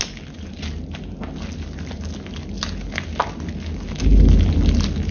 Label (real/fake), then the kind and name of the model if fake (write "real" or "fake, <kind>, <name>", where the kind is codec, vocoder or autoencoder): real